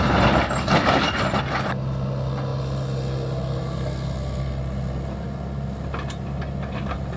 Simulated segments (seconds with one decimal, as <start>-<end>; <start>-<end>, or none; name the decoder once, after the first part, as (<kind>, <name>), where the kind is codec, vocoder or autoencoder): none